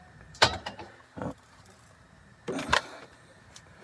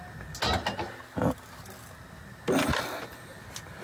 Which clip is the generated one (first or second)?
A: first